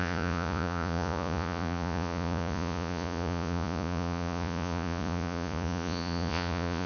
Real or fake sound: fake